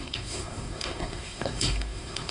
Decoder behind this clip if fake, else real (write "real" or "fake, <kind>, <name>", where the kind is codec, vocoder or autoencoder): fake, codec, SNAC